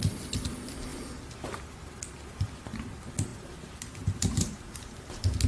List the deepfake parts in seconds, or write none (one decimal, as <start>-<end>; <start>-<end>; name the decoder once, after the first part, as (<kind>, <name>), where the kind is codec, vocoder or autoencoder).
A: 3.3-5.1 (vocoder, BigVGAN v2)